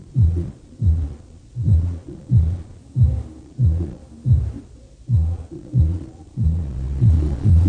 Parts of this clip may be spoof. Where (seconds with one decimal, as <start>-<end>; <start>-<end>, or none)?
0.0-2.8; 3.4-4.0; 4.6-7.7

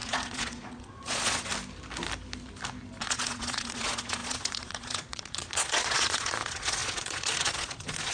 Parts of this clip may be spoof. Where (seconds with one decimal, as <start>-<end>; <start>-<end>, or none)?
0.0-1.5; 3.0-8.1

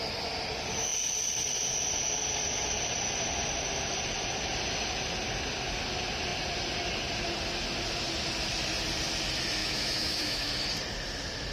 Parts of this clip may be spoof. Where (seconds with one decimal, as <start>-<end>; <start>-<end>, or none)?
9.6-10.5

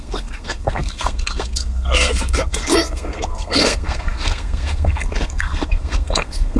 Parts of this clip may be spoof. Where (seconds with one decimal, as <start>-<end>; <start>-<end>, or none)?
0.0-6.6